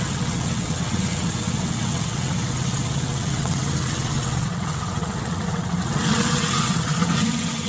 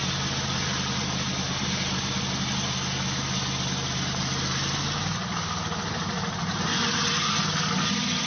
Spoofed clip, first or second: first